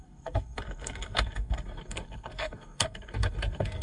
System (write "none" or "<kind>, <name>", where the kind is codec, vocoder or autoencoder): codec, SNAC